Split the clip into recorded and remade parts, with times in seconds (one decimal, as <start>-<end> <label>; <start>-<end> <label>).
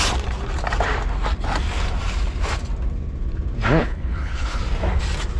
0.0-3.8 recorded; 3.8-4.6 remade; 4.6-5.4 recorded